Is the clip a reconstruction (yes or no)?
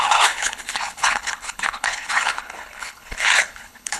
yes